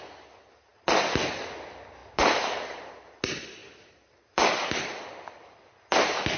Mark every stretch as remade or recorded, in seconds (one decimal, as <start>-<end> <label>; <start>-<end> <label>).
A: 0.0-6.4 recorded